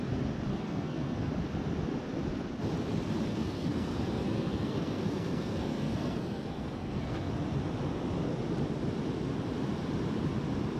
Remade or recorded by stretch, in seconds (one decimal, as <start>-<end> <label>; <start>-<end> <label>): 0.0-0.5 recorded; 0.5-1.3 remade; 1.3-3.3 recorded; 3.3-7.3 remade; 7.3-10.8 recorded